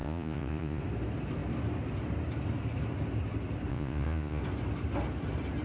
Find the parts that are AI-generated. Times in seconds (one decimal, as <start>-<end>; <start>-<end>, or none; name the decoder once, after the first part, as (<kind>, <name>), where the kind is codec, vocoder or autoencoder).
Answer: 0.0-0.8 (vocoder, Vocos); 3.7-4.4

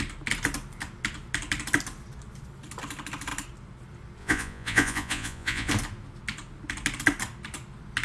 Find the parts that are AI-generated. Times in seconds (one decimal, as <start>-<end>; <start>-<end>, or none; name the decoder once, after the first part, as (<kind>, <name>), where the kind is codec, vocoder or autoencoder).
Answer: 4.2-5.7 (vocoder, Vocos)